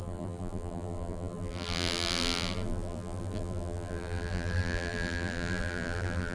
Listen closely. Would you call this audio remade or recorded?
remade